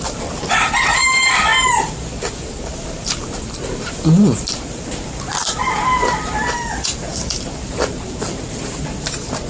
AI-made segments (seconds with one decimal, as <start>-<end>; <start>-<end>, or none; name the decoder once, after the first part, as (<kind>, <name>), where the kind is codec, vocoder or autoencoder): 0.0-1.5 (vocoder, BigVGAN v2); 2.3-9.5